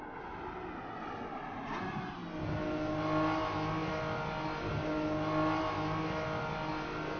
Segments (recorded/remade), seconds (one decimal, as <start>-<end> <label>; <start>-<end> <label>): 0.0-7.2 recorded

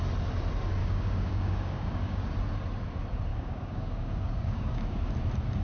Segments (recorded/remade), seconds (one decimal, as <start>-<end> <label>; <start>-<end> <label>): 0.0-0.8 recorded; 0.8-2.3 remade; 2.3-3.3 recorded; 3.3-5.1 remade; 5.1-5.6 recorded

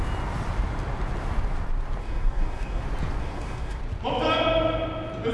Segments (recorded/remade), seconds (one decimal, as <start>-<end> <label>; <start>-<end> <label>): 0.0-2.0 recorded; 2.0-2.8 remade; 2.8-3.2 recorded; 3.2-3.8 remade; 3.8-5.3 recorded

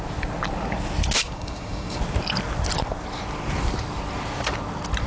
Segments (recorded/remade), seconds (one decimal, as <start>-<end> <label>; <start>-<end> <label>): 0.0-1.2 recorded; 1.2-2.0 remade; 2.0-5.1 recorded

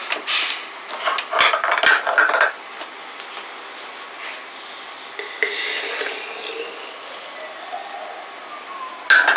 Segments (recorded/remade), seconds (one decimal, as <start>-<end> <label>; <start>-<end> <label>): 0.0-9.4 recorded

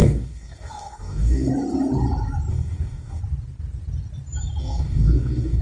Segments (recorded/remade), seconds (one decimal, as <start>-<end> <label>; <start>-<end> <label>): 0.0-1.5 remade; 1.5-2.5 recorded; 2.5-3.2 remade; 3.2-4.6 recorded; 4.6-5.6 remade

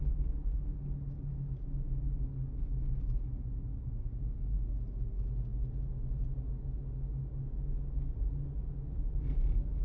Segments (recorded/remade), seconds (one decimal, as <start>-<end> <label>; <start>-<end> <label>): 0.0-3.7 recorded; 3.7-4.6 remade; 4.6-9.8 recorded

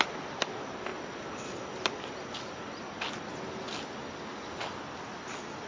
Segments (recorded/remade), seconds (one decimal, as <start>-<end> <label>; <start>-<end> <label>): 0.0-5.7 recorded